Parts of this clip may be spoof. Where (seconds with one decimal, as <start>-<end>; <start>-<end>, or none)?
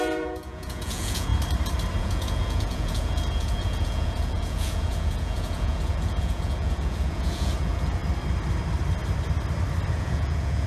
0.0-1.3; 2.0-8.0; 9.9-10.7